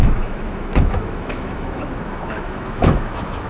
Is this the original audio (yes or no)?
no